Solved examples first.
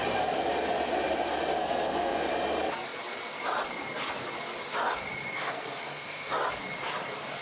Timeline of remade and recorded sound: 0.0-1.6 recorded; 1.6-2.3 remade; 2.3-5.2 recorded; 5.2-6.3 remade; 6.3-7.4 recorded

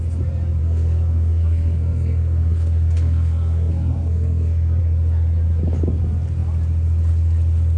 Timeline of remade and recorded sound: 0.0-0.6 recorded; 0.6-4.8 remade; 4.8-7.8 recorded